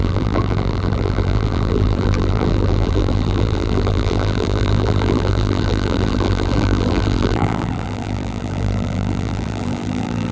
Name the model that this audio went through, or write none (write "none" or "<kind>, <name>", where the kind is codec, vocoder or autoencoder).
vocoder, BigVGAN v2